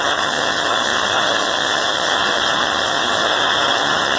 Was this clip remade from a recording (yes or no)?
yes